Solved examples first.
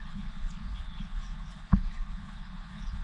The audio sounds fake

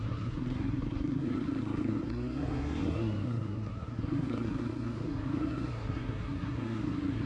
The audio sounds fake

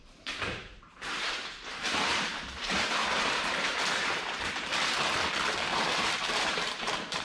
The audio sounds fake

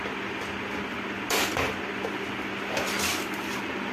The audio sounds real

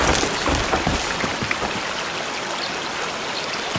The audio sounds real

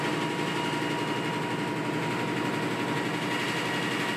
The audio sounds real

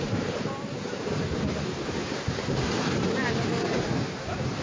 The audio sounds real